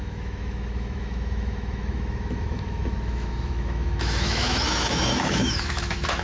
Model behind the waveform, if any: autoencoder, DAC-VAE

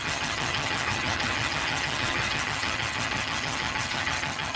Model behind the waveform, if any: vocoder, HiFi-GAN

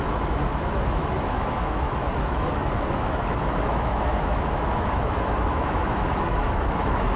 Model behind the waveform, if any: autoencoder, DAC-VAE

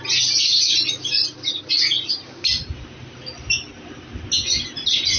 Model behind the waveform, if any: none